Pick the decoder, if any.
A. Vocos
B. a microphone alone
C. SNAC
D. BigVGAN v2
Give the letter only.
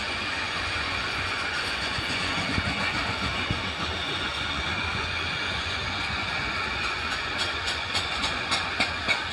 A